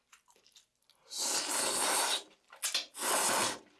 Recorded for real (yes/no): yes